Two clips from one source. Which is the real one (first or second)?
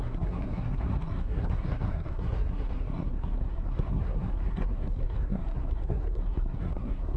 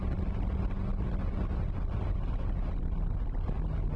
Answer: second